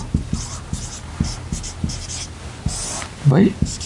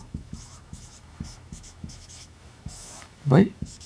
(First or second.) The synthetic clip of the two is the second